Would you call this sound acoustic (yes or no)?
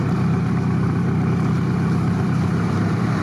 no